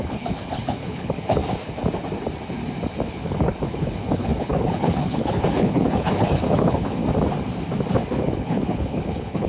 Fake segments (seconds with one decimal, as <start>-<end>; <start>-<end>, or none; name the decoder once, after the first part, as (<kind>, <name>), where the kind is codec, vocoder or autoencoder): 0.0-1.4 (codec, HILCodec); 3.1-7.0; 8.1-9.5